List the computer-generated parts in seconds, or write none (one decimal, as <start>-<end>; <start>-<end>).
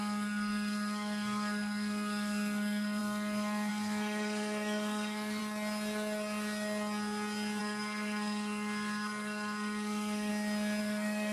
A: 0.0-5.4; 7.6-10.3; 10.8-11.3